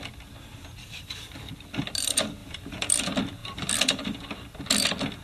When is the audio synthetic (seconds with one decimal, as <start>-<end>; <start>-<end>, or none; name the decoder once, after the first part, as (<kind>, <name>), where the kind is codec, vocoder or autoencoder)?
0.8-1.5 (codec, DAC)